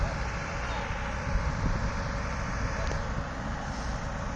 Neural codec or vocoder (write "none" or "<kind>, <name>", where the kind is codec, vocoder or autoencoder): none